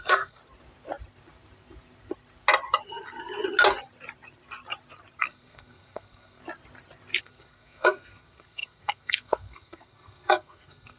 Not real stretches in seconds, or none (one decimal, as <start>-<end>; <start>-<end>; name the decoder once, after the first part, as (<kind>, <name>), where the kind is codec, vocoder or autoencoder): 0.0-0.4 (codec, SNAC); 5.2-6.4; 7.2-11.0